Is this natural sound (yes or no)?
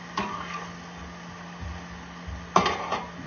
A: yes